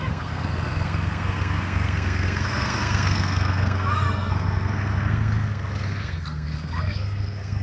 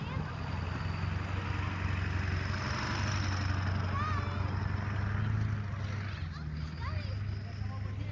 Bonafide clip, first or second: second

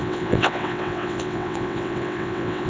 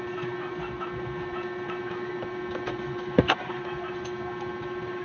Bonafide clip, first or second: second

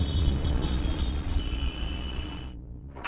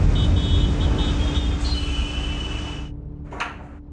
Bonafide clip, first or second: second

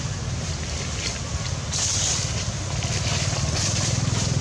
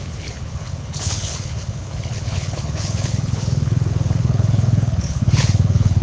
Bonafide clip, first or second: first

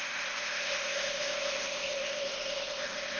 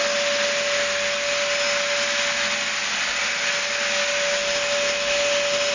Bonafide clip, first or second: second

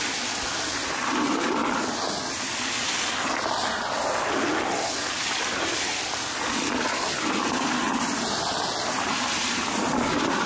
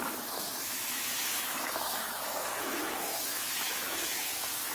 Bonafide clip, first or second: first